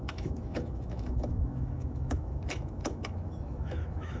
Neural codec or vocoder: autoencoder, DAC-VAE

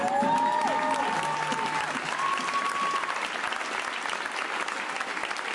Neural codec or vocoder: none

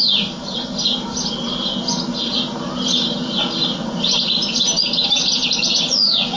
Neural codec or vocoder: none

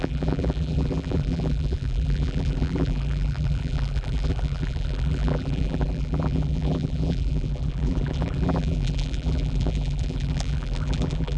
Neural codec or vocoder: vocoder, BigVGAN v2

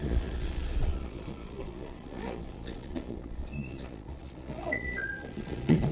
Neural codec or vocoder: vocoder, Vocos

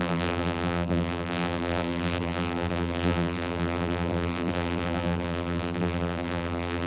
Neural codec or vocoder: vocoder, BigVGAN v2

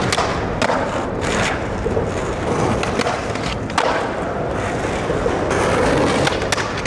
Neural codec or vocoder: none